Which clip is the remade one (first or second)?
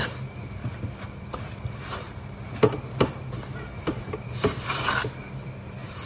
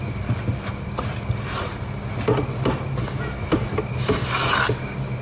first